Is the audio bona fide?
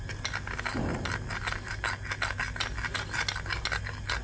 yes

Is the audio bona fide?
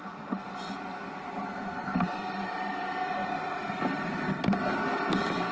yes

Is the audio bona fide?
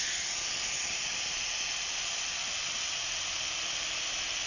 yes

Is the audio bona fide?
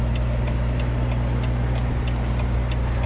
yes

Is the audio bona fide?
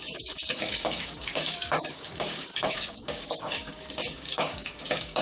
no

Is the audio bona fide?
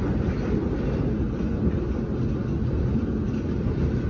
yes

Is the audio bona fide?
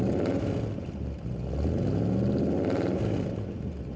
yes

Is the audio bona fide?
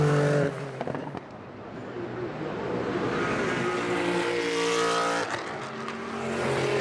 yes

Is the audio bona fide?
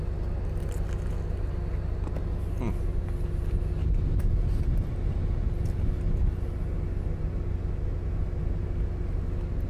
yes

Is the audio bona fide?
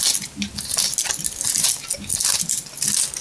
yes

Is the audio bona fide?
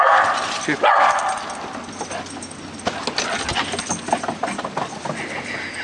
yes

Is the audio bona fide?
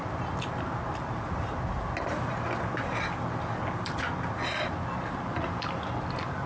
yes